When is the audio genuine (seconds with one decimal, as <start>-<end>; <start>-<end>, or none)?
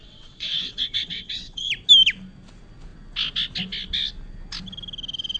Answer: 1.7-5.4